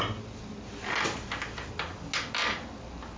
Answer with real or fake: real